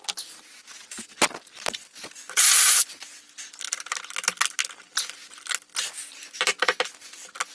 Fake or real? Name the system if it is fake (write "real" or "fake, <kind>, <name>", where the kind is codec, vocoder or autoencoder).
real